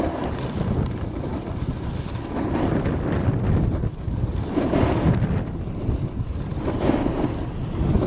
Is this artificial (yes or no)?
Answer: yes